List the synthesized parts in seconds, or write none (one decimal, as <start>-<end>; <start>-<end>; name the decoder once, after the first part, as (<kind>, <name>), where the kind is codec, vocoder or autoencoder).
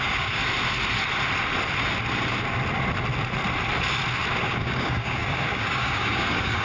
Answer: 0.0-0.4 (codec, DAC); 4.4-6.6